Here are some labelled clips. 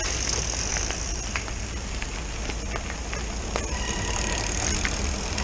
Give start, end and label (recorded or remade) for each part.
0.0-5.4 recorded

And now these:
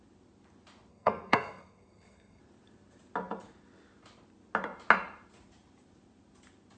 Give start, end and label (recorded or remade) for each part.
0.0-0.9 recorded; 0.9-2.4 remade; 2.4-6.8 recorded